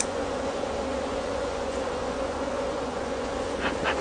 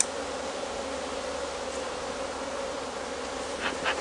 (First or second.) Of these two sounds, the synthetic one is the first